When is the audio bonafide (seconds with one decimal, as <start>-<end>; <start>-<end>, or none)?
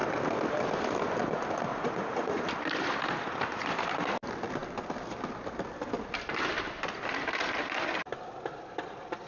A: 0.0-1.7; 2.4-9.3